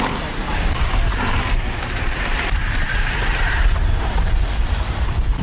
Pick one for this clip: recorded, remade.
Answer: remade